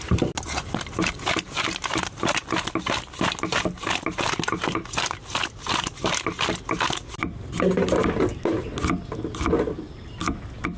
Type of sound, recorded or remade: recorded